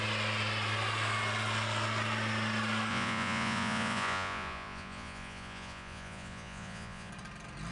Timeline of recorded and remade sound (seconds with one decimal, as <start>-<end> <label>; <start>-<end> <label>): 0.0-2.9 recorded; 2.9-7.1 remade; 7.1-7.7 recorded